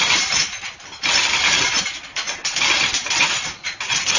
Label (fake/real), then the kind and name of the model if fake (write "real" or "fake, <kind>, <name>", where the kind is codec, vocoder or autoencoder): real